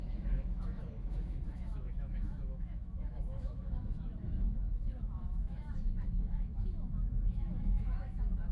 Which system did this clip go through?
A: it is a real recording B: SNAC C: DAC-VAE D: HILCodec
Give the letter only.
C